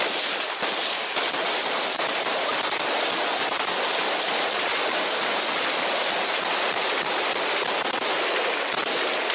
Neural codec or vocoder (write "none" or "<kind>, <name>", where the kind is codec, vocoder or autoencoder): none